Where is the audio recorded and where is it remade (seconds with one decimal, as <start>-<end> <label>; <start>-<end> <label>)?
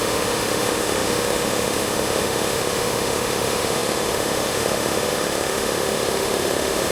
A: 0.0-6.9 remade